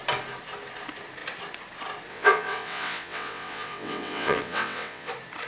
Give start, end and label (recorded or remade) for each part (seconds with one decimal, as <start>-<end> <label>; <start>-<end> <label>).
0.0-2.1 recorded; 2.1-5.1 remade; 5.1-5.5 recorded